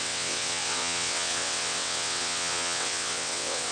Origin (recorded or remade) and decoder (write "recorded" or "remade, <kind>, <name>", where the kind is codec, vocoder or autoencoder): remade, vocoder, WaveNeXt